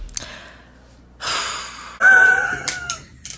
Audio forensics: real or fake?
real